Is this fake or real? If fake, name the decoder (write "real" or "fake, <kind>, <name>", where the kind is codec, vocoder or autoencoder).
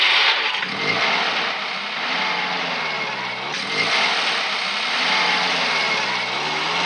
real